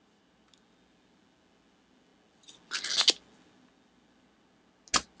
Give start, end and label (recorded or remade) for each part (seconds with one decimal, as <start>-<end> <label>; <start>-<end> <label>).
0.0-5.2 recorded